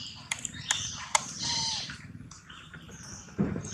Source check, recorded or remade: remade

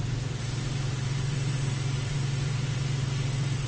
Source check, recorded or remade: remade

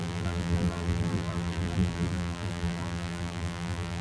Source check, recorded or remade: remade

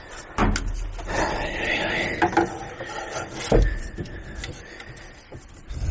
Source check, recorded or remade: recorded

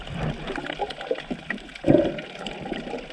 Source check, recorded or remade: recorded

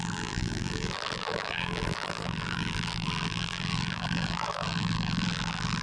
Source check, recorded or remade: remade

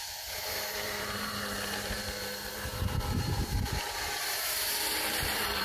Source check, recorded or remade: remade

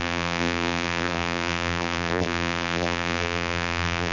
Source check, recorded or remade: remade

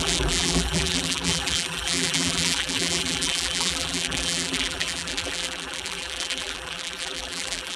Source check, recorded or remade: remade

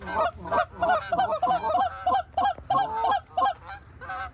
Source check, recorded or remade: recorded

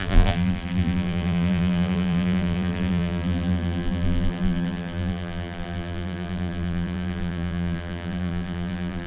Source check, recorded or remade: remade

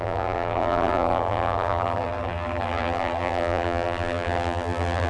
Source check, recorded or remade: remade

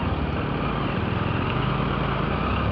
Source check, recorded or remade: recorded